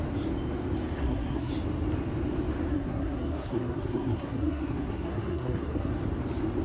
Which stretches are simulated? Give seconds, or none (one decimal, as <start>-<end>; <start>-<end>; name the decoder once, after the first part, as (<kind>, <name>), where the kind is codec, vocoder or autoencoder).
1.0-1.5 (codec, SNAC); 2.7-5.9